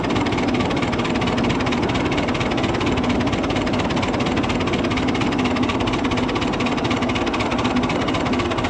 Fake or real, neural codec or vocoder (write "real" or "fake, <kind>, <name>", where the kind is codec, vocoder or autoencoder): real